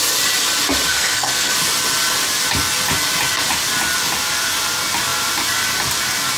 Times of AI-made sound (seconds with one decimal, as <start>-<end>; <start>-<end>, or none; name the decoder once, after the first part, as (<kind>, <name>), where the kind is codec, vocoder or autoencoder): 0.9-1.5 (codec, SNAC)